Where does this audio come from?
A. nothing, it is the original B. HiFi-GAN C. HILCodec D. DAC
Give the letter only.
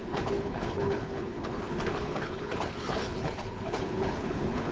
C